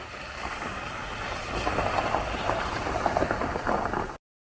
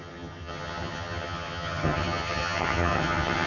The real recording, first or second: first